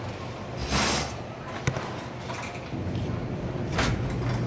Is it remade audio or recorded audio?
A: recorded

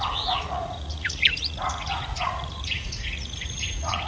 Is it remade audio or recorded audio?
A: remade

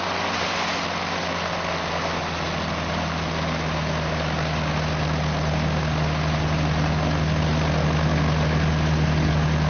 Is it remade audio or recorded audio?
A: recorded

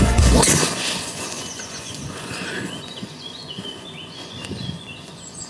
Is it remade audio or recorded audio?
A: remade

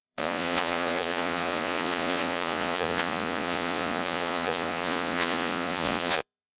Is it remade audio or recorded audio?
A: remade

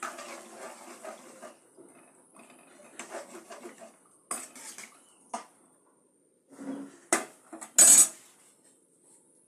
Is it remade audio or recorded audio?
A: recorded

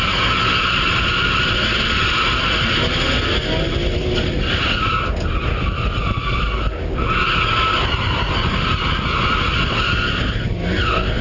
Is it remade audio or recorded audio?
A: recorded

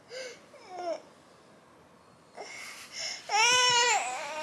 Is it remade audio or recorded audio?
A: recorded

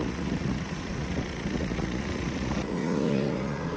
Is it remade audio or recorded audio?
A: remade